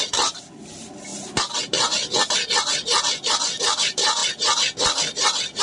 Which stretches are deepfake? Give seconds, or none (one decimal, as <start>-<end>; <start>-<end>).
0.0-1.1; 3.6-4.2